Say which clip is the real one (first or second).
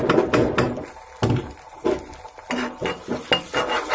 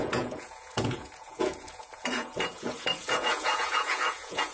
first